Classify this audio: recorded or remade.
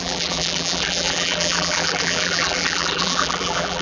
remade